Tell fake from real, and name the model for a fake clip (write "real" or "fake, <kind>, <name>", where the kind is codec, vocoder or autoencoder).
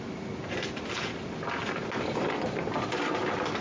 real